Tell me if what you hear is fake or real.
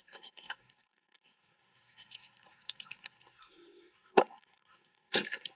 fake